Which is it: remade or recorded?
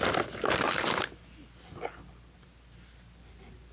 recorded